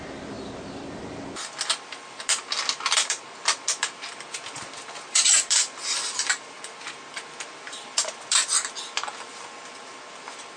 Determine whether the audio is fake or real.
real